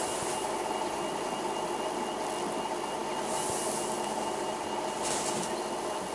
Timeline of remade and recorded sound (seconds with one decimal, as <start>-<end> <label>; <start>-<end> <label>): 0.0-6.1 recorded